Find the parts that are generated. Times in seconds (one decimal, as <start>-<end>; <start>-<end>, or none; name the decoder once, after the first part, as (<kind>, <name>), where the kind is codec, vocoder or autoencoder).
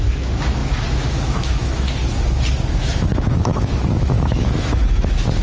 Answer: 0.0-2.0 (autoencoder, DAC-VAE); 2.7-5.4